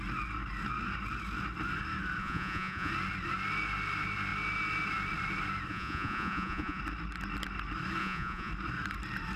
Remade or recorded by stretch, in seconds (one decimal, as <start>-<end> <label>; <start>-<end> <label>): 0.0-2.2 recorded; 2.2-2.9 remade; 2.9-5.7 recorded; 5.7-6.8 remade; 6.8-8.0 recorded; 8.0-8.5 remade; 8.5-9.4 recorded

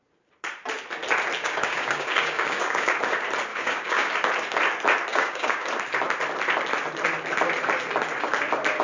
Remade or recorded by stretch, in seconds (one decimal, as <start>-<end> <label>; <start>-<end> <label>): 0.0-1.4 recorded; 1.4-3.0 remade; 3.0-3.5 recorded; 3.5-4.1 remade; 4.1-5.1 recorded; 5.1-5.7 remade; 5.7-8.8 recorded

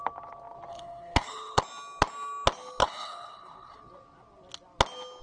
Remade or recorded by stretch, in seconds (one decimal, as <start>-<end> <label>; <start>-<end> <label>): 0.0-0.7 recorded; 0.7-1.6 remade; 1.6-2.8 recorded; 2.8-3.8 remade; 3.8-5.2 recorded

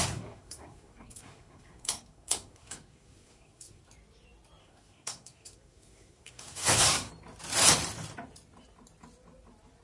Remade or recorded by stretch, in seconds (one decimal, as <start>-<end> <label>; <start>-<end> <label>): 0.0-3.8 remade; 3.8-4.6 recorded; 4.6-7.1 remade; 7.1-9.8 recorded